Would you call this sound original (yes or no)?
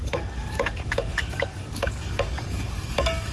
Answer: no